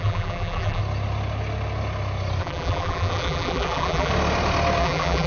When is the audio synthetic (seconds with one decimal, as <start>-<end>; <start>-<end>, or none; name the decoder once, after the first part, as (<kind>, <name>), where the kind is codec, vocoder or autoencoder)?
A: 0.0-0.8 (vocoder, BigVGAN v2); 2.4-4.1; 4.8-5.3